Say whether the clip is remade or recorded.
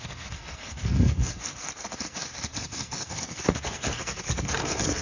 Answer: remade